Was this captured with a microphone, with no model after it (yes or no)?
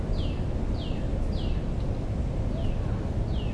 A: yes